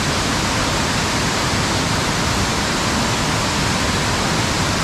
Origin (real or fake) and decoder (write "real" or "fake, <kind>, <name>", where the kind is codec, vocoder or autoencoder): real